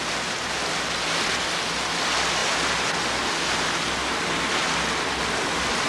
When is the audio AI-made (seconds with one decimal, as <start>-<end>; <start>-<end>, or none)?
none